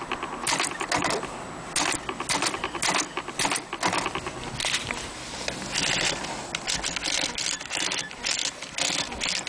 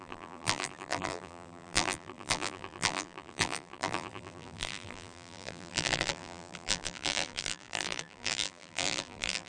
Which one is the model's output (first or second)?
second